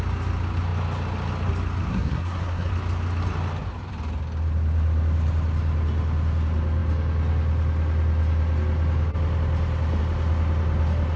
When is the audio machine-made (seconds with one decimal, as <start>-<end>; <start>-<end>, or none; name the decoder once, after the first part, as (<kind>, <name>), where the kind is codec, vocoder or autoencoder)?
1.9-2.7 (codec, SNAC)